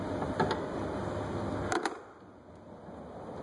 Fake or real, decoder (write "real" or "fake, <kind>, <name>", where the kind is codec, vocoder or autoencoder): real